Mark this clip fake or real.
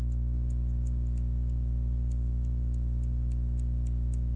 real